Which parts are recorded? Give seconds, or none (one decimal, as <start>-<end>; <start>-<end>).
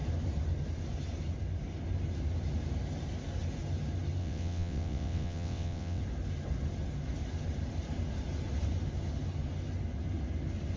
0.0-4.2; 6.0-10.8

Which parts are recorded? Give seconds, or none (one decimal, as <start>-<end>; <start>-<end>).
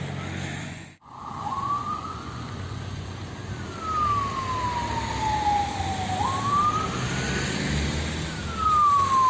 0.0-0.5; 3.5-9.3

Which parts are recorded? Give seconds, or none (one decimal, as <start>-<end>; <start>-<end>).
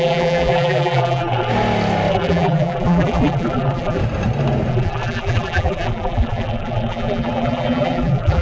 1.5-2.1; 4.0-4.7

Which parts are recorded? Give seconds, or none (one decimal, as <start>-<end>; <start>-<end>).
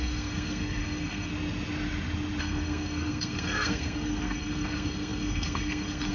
1.3-2.4